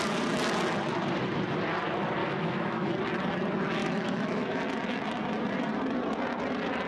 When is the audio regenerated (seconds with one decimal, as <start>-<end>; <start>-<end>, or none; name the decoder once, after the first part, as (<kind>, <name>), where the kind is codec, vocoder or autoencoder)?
2.2-2.9 (autoencoder, DAC-VAE); 3.8-4.6